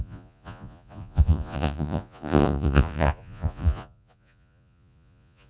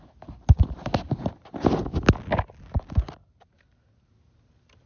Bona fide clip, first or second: second